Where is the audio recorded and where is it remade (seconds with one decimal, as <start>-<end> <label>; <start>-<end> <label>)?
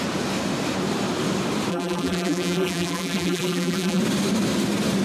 0.0-1.7 recorded; 1.7-4.0 remade; 4.0-5.0 recorded